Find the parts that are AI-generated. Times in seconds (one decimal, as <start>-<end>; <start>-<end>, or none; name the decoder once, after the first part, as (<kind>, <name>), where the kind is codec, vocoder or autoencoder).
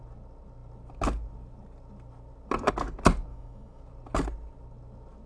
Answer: 3.3-3.8 (autoencoder, DAC-VAE)